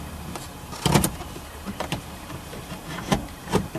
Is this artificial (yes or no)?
yes